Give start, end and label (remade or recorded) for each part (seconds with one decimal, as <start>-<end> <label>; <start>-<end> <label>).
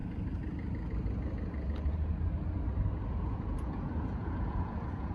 0.0-3.1 recorded; 3.1-5.1 remade